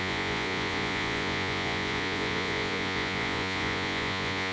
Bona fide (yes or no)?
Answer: no